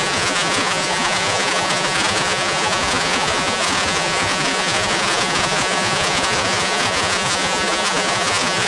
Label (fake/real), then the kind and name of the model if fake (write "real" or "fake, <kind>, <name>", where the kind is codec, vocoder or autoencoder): fake, vocoder, Vocos